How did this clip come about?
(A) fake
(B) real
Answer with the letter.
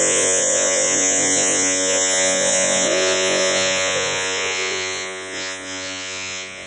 A